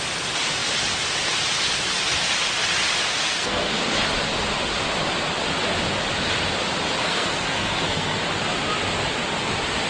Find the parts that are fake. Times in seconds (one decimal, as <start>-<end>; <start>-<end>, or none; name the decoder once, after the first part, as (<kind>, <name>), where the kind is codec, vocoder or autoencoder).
3.1-3.8 (codec, SNAC); 7.0-8.2